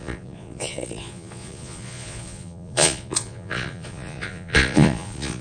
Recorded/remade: remade